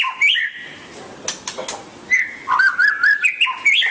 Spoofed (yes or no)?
no